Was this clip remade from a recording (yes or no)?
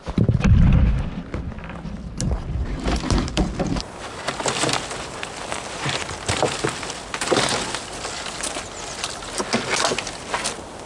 no